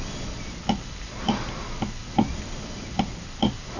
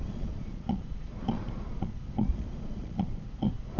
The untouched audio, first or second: first